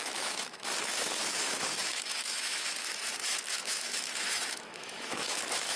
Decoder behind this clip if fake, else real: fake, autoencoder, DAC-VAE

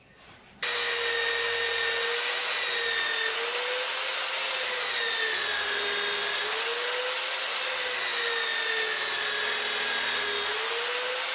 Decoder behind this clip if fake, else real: real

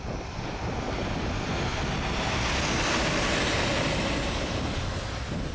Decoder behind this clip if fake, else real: real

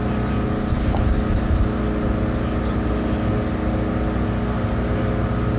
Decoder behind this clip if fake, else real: real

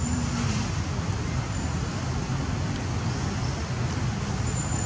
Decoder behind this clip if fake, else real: real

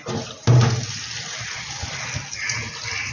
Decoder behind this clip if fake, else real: real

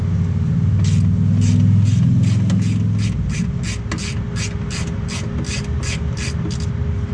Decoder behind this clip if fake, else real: real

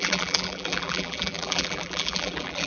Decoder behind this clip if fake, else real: fake, vocoder, BigVGAN v2